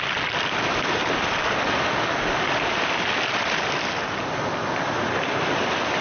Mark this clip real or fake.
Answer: real